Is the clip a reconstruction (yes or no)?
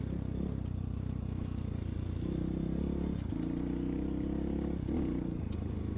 no